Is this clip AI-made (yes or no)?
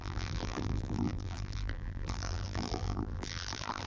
yes